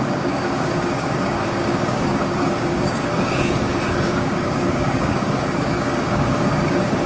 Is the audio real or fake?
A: fake